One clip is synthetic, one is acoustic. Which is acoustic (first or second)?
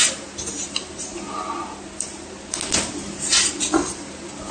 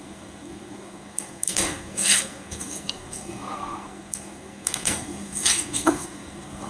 first